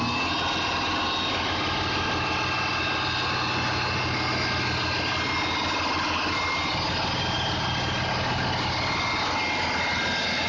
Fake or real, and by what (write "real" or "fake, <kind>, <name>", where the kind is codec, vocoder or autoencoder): real